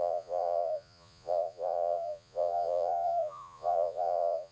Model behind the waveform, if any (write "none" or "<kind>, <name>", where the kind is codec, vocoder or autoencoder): vocoder, Vocos